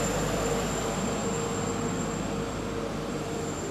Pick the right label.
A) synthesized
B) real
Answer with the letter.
B